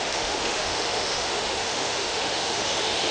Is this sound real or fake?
fake